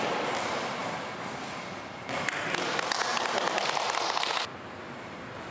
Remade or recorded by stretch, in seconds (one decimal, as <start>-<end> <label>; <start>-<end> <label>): 0.0-5.5 recorded

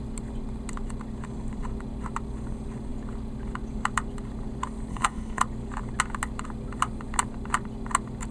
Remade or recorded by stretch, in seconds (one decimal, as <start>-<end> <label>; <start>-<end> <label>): 0.0-4.9 recorded; 4.9-5.4 remade; 5.4-8.3 recorded

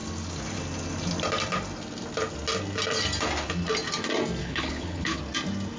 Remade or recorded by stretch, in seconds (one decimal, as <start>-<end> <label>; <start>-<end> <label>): 0.0-4.4 recorded; 4.4-5.2 remade; 5.2-5.8 recorded

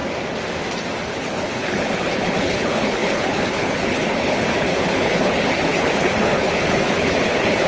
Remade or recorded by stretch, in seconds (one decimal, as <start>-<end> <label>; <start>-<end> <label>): 0.0-1.1 recorded; 1.1-7.7 remade

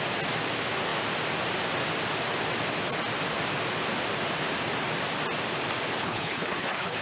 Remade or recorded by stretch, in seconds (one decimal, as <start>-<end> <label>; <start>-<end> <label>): 0.0-6.0 recorded; 6.0-7.0 remade

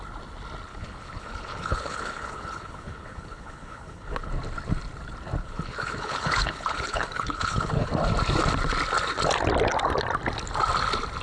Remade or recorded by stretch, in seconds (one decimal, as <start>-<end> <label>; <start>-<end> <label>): 0.0-0.7 recorded; 0.7-4.3 remade; 4.3-5.4 recorded; 5.4-7.9 remade; 7.9-11.2 recorded

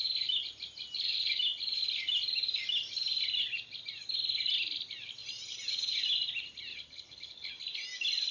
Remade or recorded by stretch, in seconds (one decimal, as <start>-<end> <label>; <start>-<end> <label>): 0.0-6.7 recorded; 6.7-7.5 remade; 7.5-8.3 recorded